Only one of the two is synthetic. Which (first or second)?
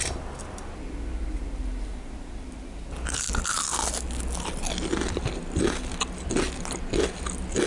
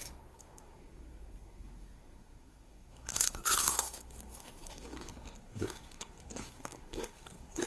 second